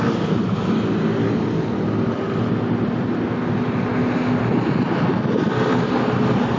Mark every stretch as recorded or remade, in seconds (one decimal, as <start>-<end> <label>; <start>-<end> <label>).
0.0-6.6 recorded